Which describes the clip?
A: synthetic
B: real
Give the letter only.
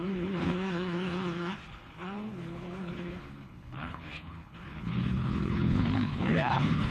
A